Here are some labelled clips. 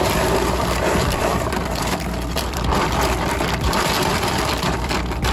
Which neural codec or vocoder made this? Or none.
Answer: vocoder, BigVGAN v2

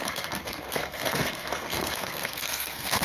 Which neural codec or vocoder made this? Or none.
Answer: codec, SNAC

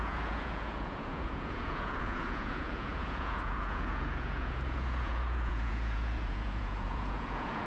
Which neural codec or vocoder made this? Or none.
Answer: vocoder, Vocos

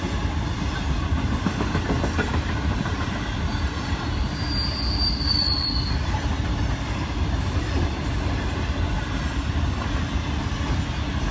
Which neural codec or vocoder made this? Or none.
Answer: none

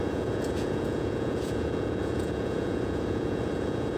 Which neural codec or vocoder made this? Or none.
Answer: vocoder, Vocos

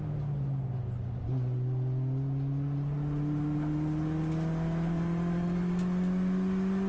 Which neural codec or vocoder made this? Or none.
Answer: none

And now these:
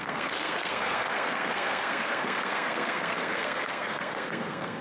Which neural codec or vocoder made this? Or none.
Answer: codec, SNAC